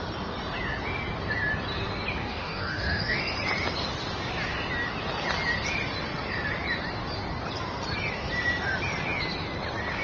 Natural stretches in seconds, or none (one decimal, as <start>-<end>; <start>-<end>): 0.0-2.2; 3.2-10.0